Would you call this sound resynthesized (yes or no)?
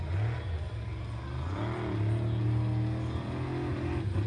no